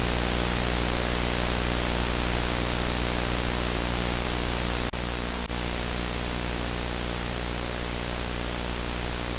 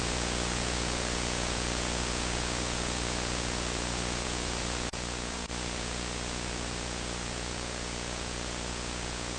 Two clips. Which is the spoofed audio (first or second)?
second